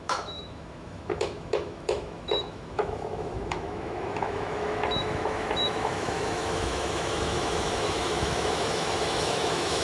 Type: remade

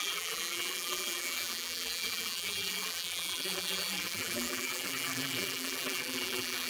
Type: remade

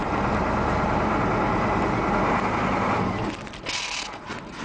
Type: recorded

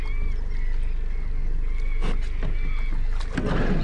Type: recorded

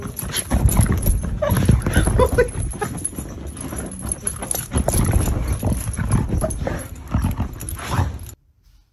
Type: recorded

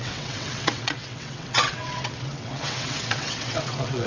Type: remade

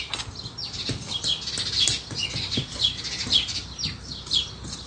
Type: recorded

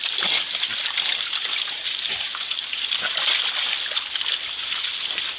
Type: recorded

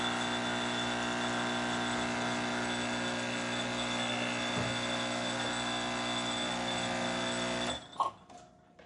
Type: recorded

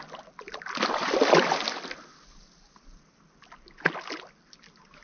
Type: recorded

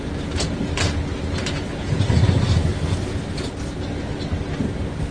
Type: recorded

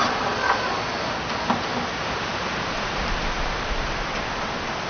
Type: recorded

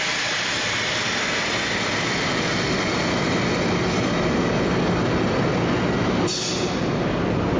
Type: recorded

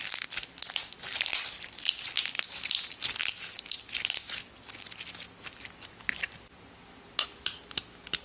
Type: recorded